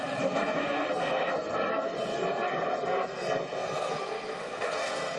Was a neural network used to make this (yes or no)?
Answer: yes